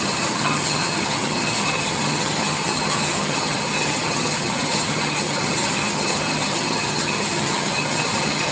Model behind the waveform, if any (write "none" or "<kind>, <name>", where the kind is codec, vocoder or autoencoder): vocoder, HiFi-GAN